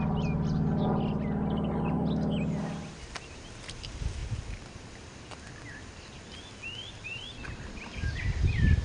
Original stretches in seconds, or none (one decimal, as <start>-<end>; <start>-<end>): 0.0-8.8